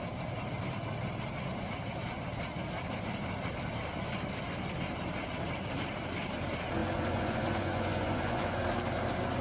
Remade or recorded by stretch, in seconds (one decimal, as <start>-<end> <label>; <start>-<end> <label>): 0.0-6.8 recorded; 6.8-8.6 remade; 8.6-9.4 recorded